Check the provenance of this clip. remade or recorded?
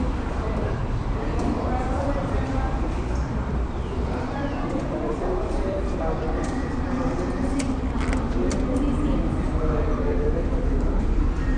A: remade